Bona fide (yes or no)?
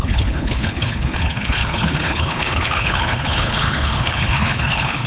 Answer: no